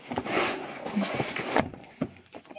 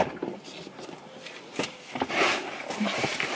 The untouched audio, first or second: second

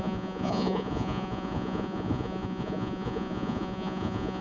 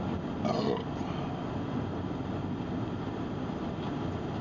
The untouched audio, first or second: second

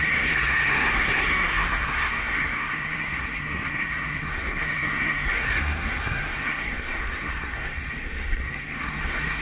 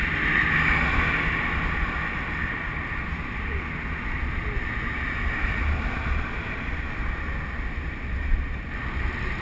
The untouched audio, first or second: second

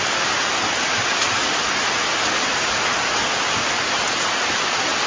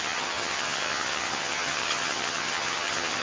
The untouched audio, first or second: first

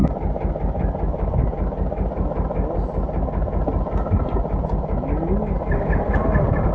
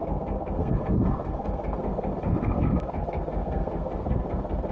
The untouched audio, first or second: first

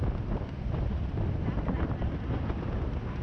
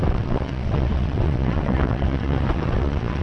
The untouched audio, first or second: first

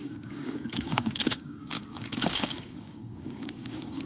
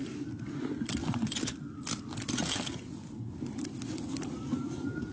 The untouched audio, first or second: second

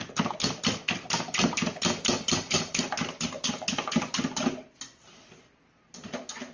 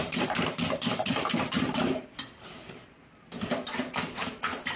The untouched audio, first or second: first